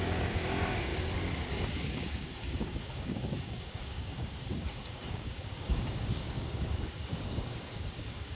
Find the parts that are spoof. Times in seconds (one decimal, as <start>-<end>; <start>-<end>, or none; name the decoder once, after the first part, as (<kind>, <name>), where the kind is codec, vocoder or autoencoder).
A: 0.0-0.9 (codec, DAC); 1.5-8.4